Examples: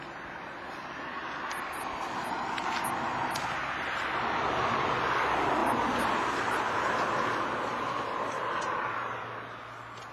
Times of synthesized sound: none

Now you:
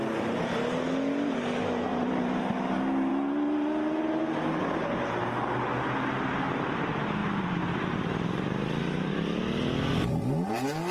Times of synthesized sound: 1.9-2.4 (vocoder, BigVGAN v2); 7.2-9.1